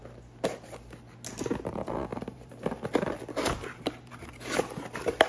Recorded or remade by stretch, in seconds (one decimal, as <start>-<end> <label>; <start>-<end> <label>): 0.0-2.1 recorded; 2.1-4.6 remade; 4.6-5.3 recorded